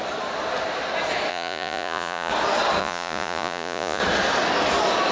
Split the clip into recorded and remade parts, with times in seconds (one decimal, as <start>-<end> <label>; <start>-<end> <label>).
0.0-1.3 recorded; 1.3-2.3 remade; 2.3-2.8 recorded; 2.8-4.0 remade; 4.0-5.1 recorded